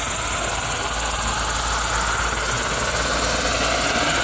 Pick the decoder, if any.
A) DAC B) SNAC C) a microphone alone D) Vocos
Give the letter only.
C